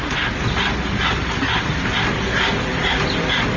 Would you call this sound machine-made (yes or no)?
no